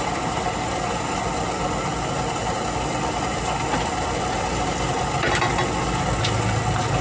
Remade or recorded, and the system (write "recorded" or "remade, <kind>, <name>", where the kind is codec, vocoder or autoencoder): recorded